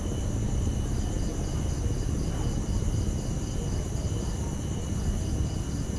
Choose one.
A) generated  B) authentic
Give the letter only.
B